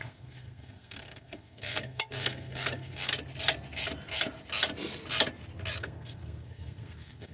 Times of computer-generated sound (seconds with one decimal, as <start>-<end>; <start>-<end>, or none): 0.0-3.1; 5.8-7.3